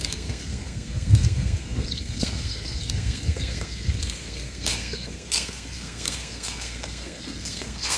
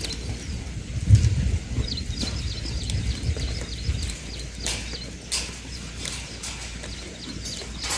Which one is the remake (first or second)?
first